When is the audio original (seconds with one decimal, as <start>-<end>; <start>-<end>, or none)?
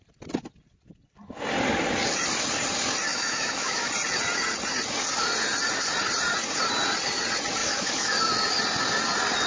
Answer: 0.0-3.1; 3.9-7.6; 8.2-9.5